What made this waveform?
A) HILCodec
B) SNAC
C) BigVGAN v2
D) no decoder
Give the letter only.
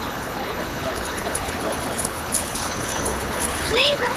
A